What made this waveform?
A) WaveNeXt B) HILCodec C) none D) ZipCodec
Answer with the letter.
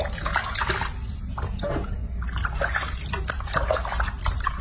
C